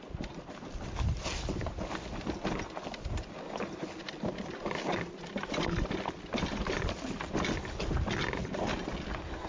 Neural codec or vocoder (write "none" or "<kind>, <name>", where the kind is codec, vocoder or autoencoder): none